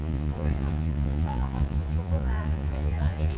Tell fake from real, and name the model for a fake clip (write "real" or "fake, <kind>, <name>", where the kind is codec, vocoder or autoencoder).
fake, vocoder, Vocos